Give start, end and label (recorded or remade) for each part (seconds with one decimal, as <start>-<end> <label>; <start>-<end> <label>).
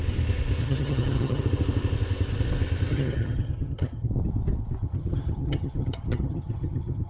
0.0-0.6 recorded; 0.6-1.4 remade; 1.4-2.9 recorded; 2.9-4.1 remade; 4.1-4.8 recorded; 4.8-7.1 remade